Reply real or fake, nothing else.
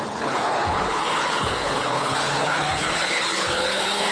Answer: fake